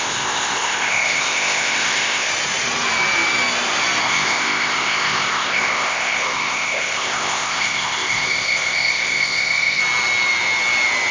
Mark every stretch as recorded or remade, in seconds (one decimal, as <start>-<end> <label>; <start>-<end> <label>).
0.0-2.3 remade; 2.3-4.0 recorded; 4.0-9.8 remade; 9.8-11.1 recorded